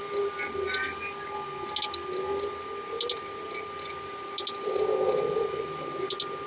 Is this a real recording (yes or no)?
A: yes